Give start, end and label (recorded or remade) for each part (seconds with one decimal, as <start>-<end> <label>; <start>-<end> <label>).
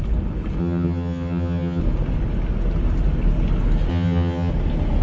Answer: 0.0-0.6 recorded; 0.6-1.8 remade; 1.8-3.9 recorded; 3.9-4.5 remade; 4.5-5.0 recorded